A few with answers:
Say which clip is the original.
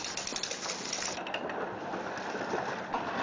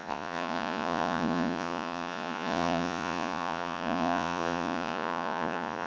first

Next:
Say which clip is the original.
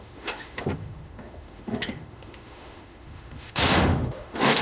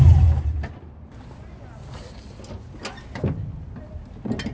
second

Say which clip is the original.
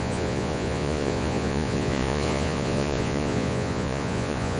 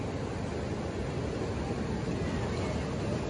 second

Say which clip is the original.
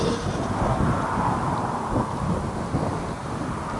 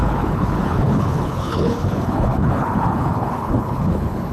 first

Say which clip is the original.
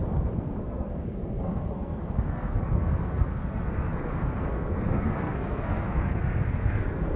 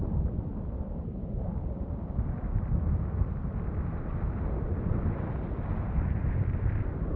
second